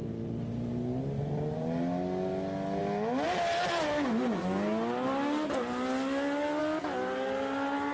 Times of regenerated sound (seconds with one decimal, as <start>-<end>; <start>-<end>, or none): none